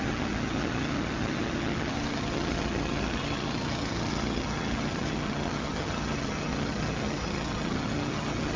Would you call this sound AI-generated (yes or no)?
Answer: yes